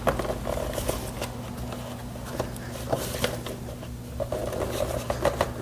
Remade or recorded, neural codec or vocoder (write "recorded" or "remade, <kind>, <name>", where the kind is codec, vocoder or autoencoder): recorded